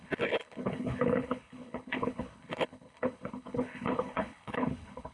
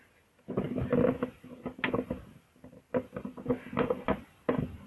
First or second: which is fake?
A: first